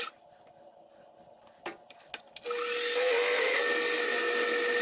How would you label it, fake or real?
real